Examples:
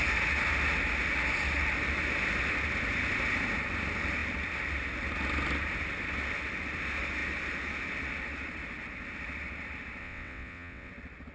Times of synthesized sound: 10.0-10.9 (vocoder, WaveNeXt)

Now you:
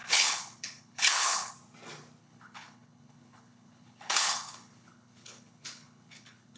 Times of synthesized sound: 0.0-1.5 (codec, HILCodec); 2.2-6.6

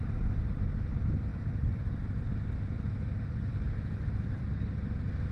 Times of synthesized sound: 3.5-4.4 (vocoder, BigVGAN v2)

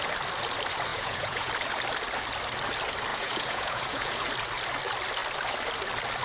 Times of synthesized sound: 0.9-1.5 (vocoder, Vocos); 3.1-4.3